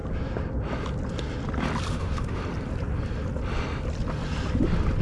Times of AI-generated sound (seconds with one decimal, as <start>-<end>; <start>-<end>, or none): 1.9-2.4

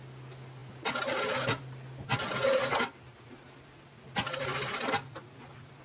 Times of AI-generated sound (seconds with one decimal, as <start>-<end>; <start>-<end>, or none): none

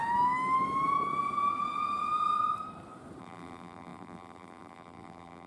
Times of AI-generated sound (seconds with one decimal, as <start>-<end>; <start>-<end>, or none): 3.2-5.5

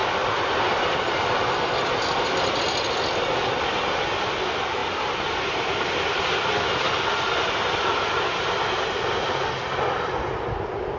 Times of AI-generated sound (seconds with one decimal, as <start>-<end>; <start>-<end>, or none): 4.8-6.3

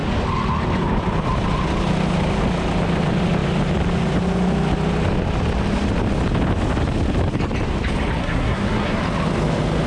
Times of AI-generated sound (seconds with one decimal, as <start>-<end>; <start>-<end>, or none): 8.2-9.0

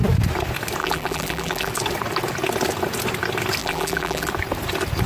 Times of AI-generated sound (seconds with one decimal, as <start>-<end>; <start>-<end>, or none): 0.8-1.7; 3.6-4.3

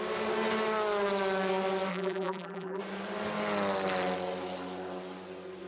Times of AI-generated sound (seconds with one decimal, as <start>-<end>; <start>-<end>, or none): 1.9-2.8